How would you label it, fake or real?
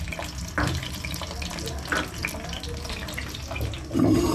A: real